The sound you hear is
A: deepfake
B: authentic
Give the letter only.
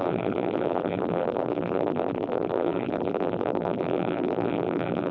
A